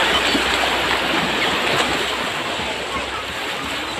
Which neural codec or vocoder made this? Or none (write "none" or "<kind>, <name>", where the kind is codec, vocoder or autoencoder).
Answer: none